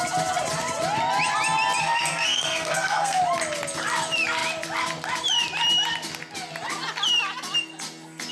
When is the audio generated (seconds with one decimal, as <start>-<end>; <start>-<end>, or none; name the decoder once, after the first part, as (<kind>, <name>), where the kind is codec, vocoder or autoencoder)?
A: 1.8-3.2 (codec, SNAC)